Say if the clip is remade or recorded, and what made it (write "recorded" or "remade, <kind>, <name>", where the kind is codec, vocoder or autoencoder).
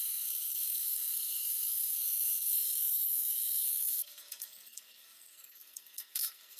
remade, codec, SNAC